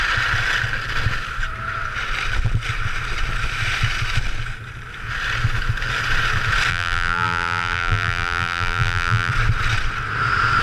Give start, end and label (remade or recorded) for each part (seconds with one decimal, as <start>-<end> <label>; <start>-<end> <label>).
0.0-6.7 recorded; 6.7-9.3 remade; 9.3-10.6 recorded